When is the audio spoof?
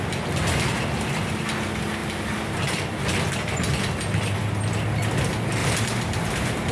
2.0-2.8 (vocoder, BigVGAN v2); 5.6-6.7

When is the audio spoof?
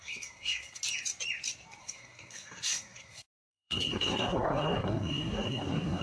0.0-0.8 (codec, SNAC); 1.8-6.0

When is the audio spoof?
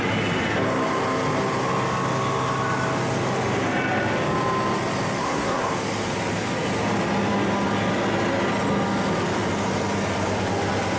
5.2-5.7 (codec, SNAC)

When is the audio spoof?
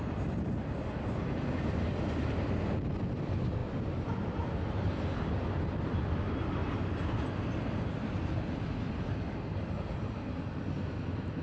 none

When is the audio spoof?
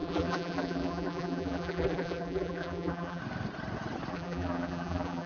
0.0-3.2 (vocoder, BigVGAN v2); 4.1-5.3